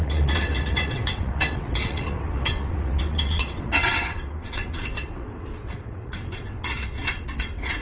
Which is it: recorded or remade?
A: remade